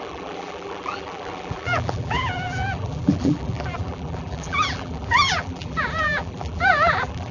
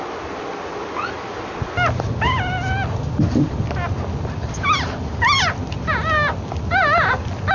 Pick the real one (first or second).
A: second